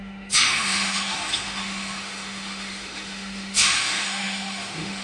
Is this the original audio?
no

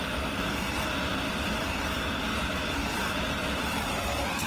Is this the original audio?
no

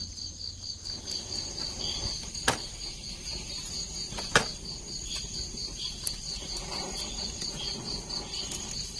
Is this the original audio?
yes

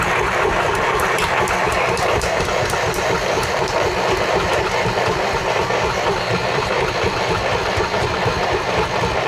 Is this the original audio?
no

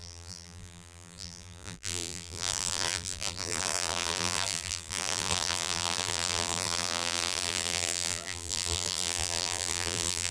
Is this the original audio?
no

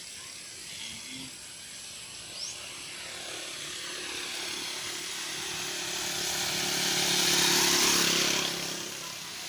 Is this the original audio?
yes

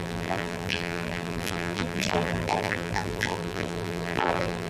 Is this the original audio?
no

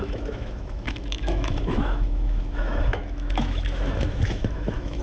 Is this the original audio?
no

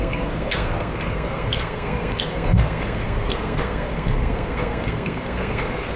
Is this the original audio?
no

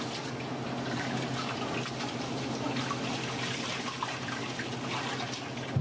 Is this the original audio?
yes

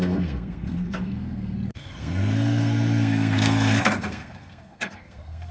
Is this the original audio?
no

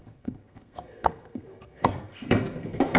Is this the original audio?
no